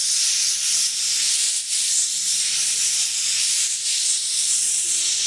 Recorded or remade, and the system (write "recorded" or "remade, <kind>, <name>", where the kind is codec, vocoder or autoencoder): recorded